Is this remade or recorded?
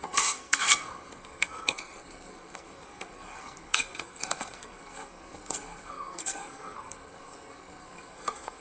remade